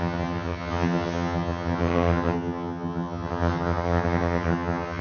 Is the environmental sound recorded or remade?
remade